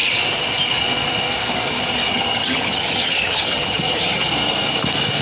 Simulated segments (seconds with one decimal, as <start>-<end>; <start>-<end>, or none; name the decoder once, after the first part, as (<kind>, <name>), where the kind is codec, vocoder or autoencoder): 2.1-4.3 (vocoder, HiFi-GAN)